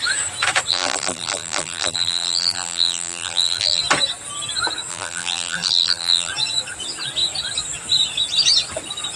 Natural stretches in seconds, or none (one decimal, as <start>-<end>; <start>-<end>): 0.0-0.7; 3.8-4.9; 6.3-9.2